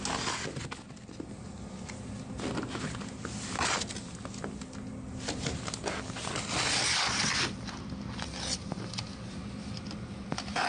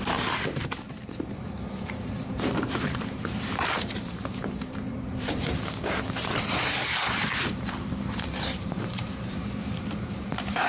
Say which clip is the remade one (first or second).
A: second